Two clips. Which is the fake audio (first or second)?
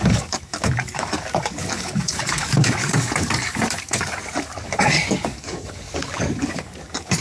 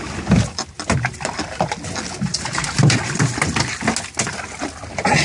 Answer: first